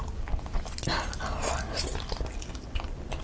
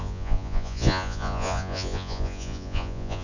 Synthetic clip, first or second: second